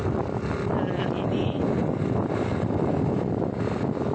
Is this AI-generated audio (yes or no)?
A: no